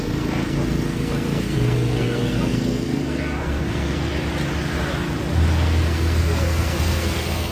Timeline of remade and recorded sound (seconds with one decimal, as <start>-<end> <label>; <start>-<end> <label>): 0.0-4.1 remade; 4.1-5.5 recorded; 5.5-7.5 remade